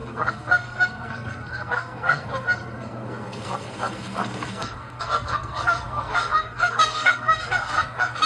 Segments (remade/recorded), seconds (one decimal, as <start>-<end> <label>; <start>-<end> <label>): 0.0-8.3 remade